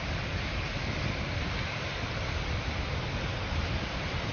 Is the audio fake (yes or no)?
no